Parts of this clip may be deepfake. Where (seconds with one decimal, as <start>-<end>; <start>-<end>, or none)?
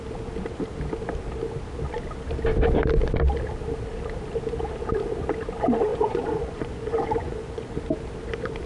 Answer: 5.9-7.8